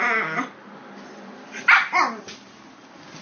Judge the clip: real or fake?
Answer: real